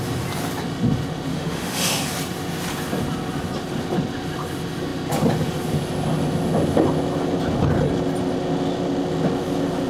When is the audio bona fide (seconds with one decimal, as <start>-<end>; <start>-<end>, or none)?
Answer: 0.0-1.3; 2.0-9.9